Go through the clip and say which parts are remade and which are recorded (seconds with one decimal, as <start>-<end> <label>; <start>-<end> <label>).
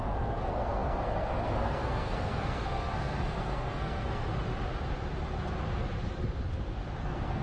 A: 0.0-4.3 remade; 4.3-7.0 recorded; 7.0-7.4 remade